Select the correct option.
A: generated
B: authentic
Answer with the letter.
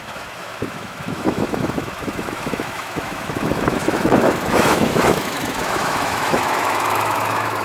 A